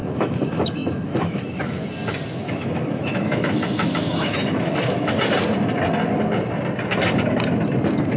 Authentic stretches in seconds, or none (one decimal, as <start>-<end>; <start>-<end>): 1.9-2.4; 5.1-8.2